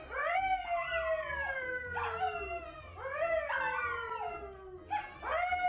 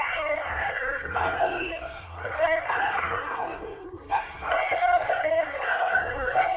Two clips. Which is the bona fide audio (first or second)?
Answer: first